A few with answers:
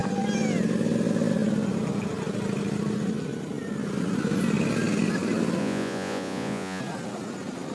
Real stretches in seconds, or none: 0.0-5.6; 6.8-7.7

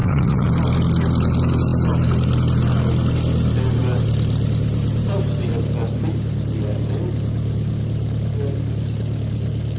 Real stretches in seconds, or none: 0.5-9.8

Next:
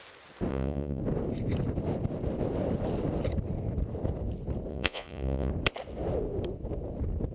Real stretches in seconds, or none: 0.0-0.5; 1.0-4.7; 5.5-7.3

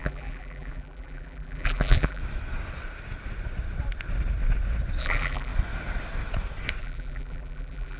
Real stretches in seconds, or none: 2.2-5.0; 5.5-6.8